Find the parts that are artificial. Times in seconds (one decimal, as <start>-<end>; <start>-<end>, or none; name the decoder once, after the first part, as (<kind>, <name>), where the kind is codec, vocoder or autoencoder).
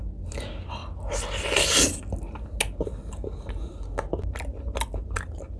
none